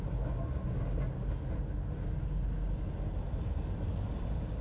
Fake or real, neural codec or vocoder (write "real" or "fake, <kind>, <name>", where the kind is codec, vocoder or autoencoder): real